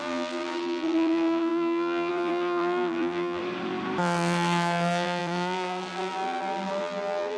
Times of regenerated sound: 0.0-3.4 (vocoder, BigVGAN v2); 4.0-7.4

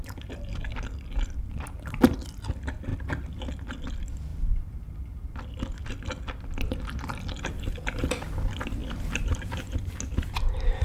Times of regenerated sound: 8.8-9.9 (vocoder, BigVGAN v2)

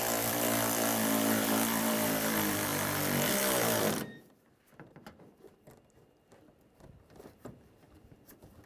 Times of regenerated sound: 0.0-8.7 (vocoder, BigVGAN v2)

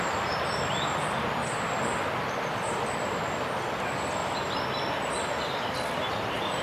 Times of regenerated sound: 0.0-4.2 (vocoder, BigVGAN v2); 6.1-6.6

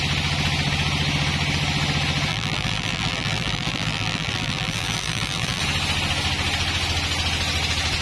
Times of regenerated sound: 2.3-5.6 (vocoder, BigVGAN v2)